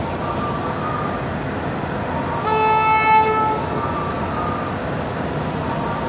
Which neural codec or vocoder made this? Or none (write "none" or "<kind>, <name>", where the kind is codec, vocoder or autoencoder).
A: none